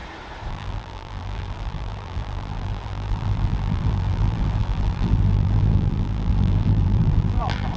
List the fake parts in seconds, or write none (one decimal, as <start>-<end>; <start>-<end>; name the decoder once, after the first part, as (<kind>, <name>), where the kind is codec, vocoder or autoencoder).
0.5-7.8 (vocoder, BigVGAN v2)